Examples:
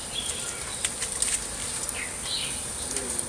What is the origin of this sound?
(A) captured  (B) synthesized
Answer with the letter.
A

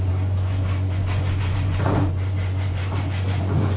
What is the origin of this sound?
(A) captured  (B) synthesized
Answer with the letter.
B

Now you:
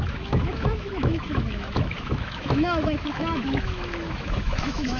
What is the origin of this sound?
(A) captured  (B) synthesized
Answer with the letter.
B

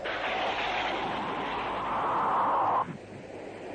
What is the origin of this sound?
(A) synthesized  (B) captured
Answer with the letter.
B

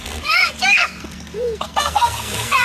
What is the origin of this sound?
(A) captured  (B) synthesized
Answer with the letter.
B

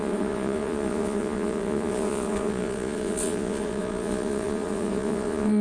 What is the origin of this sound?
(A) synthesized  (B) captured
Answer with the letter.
A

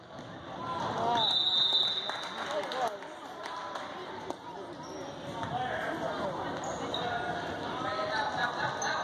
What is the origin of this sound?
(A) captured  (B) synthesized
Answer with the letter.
A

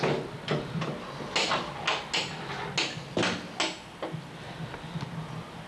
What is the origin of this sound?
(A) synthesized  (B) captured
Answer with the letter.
B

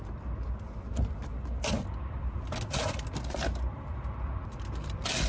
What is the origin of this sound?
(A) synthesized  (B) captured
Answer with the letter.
A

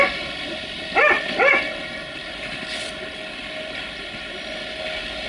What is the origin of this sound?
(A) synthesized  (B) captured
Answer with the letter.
A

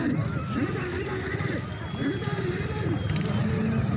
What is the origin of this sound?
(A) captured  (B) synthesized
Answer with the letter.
A